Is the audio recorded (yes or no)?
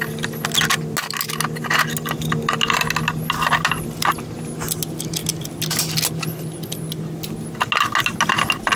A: yes